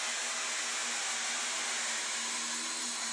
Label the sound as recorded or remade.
recorded